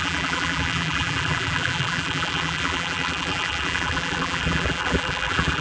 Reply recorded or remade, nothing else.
remade